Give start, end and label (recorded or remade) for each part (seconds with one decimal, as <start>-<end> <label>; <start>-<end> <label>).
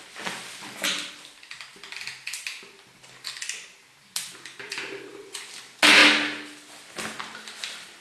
0.0-8.0 recorded